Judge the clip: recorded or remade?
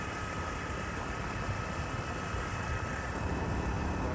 recorded